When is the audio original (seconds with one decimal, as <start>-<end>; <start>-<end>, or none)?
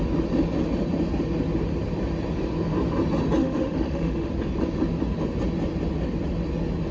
0.0-3.4; 4.3-6.9